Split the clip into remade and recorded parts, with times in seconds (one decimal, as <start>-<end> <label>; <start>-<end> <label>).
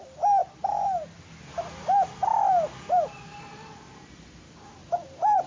0.0-4.8 recorded; 4.8-5.5 remade